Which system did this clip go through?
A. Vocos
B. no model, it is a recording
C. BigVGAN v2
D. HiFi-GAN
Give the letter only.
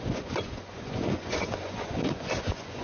A